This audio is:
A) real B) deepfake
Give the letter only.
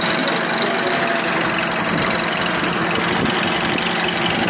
A